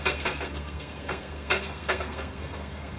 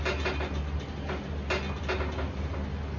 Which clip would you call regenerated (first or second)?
first